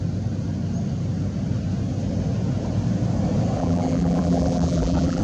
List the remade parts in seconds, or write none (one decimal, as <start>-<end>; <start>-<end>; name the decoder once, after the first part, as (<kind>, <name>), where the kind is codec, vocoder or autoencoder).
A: 3.6-5.2 (vocoder, BigVGAN v2)